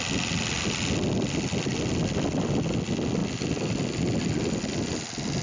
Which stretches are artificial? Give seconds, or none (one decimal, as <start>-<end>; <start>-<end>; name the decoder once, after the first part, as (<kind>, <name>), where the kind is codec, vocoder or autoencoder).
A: none